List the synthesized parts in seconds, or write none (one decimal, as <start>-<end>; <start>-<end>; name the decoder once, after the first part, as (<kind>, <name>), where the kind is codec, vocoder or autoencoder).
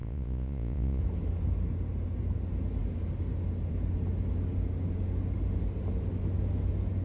0.0-1.0 (vocoder, Vocos)